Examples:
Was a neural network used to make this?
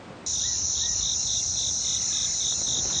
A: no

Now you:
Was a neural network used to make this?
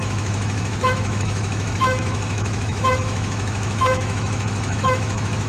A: yes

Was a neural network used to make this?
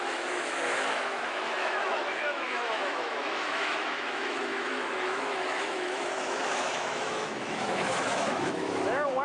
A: yes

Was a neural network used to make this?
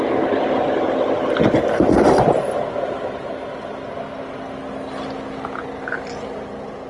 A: no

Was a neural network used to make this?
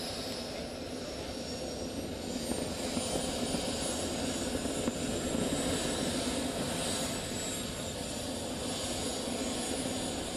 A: no